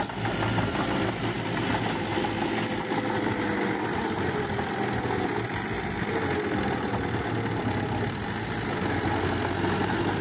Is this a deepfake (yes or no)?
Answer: no